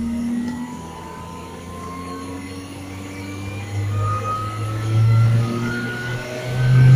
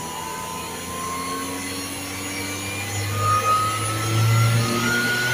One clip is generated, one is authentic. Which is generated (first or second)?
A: first